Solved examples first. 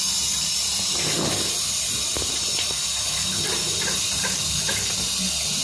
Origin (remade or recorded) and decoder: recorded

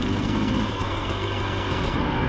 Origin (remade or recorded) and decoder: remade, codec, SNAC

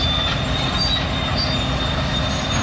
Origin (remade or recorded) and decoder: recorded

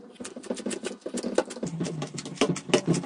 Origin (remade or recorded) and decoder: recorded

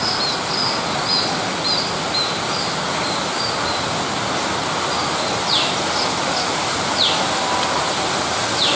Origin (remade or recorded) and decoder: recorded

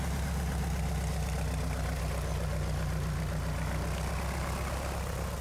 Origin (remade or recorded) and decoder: recorded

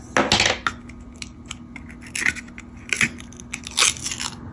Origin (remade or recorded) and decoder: recorded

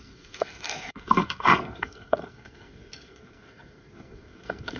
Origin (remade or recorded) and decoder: remade, codec, SNAC